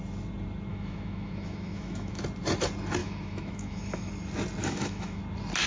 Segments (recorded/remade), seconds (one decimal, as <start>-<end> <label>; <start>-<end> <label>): 0.0-0.7 recorded; 0.7-2.2 remade; 2.2-3.0 recorded; 3.0-4.1 remade; 4.1-4.6 recorded; 4.6-5.2 remade; 5.2-5.7 recorded